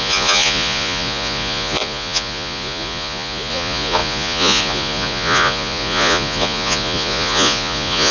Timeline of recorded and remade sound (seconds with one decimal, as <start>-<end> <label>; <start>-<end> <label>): 0.0-8.1 remade